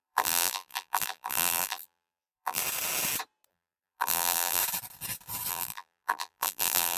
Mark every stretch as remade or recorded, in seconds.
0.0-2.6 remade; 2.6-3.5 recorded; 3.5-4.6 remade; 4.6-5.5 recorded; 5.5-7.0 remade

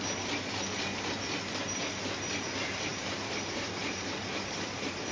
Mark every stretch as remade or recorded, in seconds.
0.0-2.9 recorded; 2.9-5.1 remade

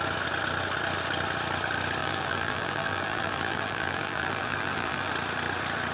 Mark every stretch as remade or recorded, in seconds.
0.0-2.0 recorded; 2.0-5.1 remade; 5.1-5.9 recorded